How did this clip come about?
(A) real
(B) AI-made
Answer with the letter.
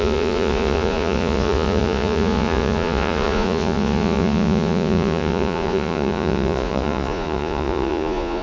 B